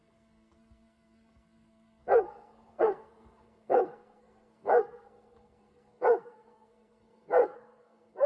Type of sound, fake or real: fake